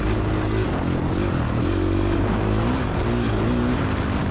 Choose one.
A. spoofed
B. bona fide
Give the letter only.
B